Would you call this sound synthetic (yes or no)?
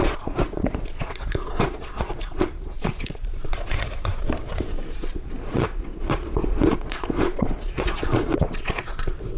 yes